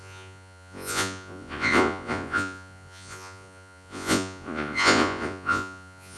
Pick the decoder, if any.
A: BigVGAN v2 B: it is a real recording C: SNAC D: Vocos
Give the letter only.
D